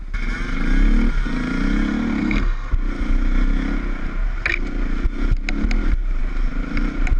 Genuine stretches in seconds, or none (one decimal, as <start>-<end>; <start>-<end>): 0.0-2.2; 2.7-7.2